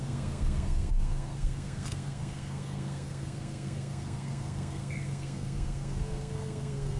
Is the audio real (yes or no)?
no